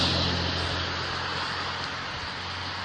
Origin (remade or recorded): recorded